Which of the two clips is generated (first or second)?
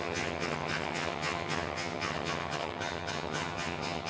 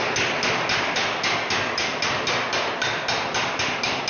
first